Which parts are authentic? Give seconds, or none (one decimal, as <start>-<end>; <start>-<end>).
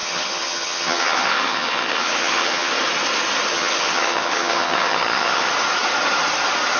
2.7-3.5; 5.5-6.8